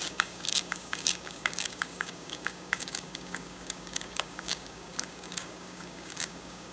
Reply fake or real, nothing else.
fake